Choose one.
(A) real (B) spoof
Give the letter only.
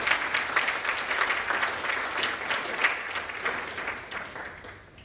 A